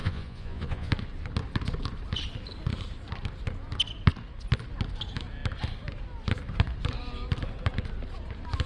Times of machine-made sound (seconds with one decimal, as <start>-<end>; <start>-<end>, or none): 0.0-0.9